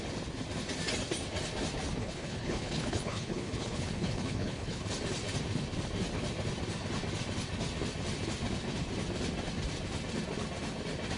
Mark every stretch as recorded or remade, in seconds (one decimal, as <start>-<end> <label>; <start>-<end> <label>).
0.0-2.0 recorded; 2.0-4.9 remade; 4.9-11.2 recorded